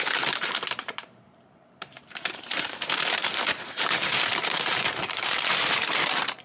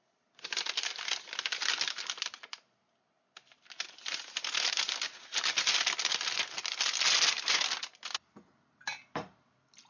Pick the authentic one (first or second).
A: second